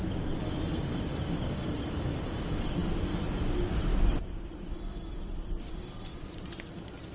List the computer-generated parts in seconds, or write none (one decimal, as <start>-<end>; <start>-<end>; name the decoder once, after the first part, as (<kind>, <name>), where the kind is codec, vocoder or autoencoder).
none